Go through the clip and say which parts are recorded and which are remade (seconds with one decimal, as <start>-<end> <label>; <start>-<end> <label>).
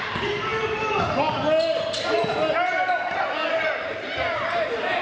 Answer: 0.0-5.0 recorded